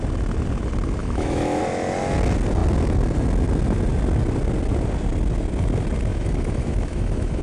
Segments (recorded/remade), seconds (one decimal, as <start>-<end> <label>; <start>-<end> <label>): 0.0-1.0 recorded; 1.0-1.6 remade; 1.6-6.1 recorded; 6.1-7.4 remade